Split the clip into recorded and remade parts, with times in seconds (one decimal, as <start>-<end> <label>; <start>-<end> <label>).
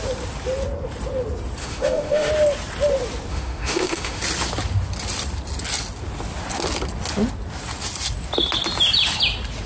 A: 0.0-1.6 recorded; 1.6-2.3 remade; 2.3-3.3 recorded; 3.3-4.2 remade; 4.2-9.7 recorded